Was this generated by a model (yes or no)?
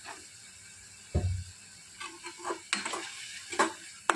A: no